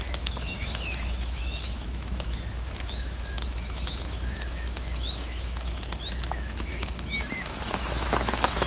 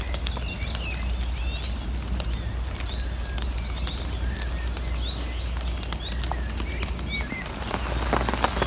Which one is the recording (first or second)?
second